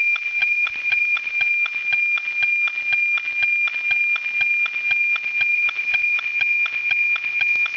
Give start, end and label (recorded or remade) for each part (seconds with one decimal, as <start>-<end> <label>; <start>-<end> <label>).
0.0-0.4 recorded; 0.4-1.3 remade; 1.3-5.5 recorded; 5.5-6.2 remade; 6.2-7.8 recorded